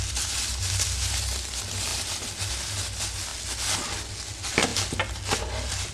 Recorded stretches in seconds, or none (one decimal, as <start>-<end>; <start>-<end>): 0.0-5.9